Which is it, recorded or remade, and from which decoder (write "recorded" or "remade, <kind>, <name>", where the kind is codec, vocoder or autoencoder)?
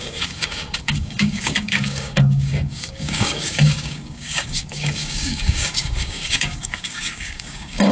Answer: remade, codec, DAC